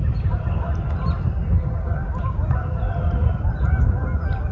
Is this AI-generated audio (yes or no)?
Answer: no